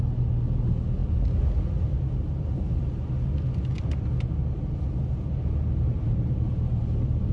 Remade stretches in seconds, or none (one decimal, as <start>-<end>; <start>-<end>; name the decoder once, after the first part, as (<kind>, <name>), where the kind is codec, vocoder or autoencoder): none